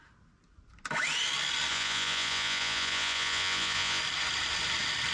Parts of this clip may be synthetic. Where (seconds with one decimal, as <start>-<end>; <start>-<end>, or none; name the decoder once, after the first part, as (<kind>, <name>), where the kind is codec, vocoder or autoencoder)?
1.7-4.0 (vocoder, Vocos)